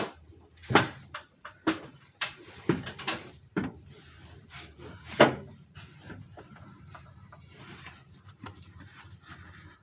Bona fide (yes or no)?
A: no